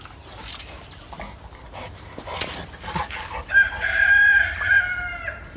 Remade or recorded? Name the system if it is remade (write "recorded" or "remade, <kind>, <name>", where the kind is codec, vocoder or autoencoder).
recorded